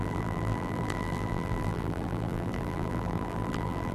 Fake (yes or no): yes